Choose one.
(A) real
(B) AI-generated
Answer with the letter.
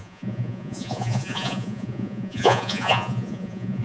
B